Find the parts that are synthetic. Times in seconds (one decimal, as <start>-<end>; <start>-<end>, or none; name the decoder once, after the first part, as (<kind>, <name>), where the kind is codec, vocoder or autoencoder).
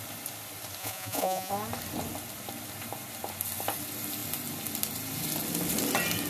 0.8-1.5 (vocoder, Vocos)